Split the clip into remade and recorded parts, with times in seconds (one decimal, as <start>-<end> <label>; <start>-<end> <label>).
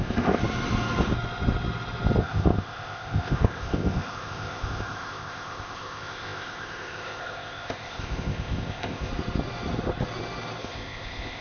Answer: 0.0-0.4 remade; 0.4-2.2 recorded; 2.2-9.1 remade; 9.1-10.6 recorded; 10.6-11.4 remade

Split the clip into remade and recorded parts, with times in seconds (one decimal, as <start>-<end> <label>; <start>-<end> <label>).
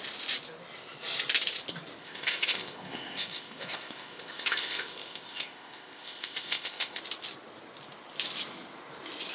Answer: 0.0-2.0 recorded; 2.0-7.0 remade; 7.0-9.3 recorded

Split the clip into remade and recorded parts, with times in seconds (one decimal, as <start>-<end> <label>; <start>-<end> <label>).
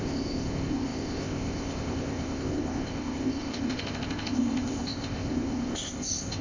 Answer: 0.0-6.4 remade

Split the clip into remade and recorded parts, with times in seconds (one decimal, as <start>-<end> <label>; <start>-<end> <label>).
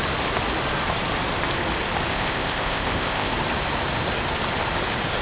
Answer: 0.0-2.1 recorded; 2.1-3.3 remade; 3.3-5.2 recorded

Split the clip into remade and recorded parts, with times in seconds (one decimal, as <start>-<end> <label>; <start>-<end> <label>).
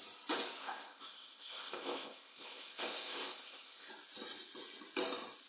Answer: 0.0-0.6 recorded; 0.6-3.9 remade; 3.9-5.5 recorded